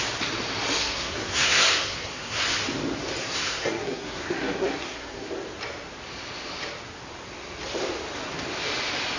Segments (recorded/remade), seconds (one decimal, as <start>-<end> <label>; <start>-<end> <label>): 0.0-0.8 recorded; 0.8-2.4 remade; 2.4-3.2 recorded; 3.2-5.3 remade; 5.3-9.2 recorded